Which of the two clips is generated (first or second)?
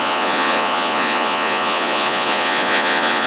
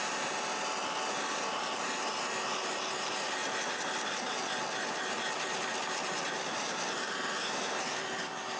first